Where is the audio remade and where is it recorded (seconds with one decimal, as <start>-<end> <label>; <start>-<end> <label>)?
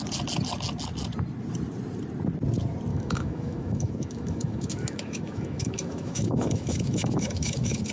0.0-2.9 recorded; 2.9-7.9 remade